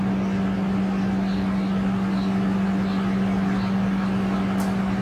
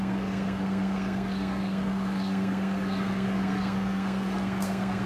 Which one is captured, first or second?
first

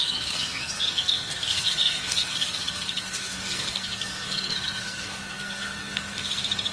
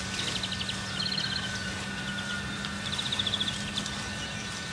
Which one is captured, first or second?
second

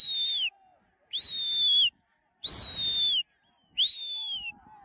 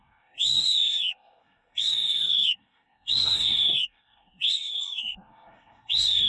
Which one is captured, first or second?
first